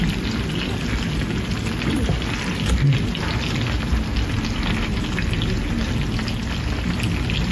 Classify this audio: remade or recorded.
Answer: recorded